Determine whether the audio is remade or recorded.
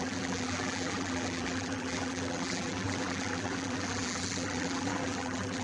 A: remade